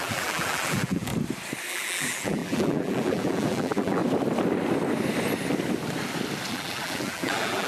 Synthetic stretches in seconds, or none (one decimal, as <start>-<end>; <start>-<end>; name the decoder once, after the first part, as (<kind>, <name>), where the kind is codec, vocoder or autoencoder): 0.0-1.1 (vocoder, BigVGAN v2); 1.7-4.0; 6.5-7.7